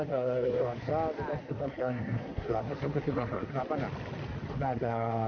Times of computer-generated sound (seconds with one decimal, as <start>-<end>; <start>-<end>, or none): 0.0-0.9; 1.4-3.6; 4.5-5.3